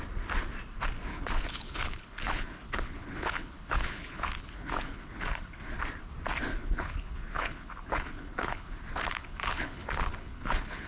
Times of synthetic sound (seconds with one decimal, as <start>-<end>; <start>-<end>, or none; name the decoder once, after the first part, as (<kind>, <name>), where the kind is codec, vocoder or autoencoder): 1.1-5.8 (codec, HILCodec); 6.5-10.9